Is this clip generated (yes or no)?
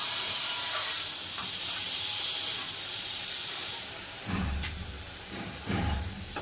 yes